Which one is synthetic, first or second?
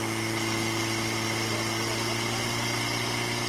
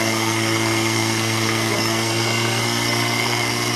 second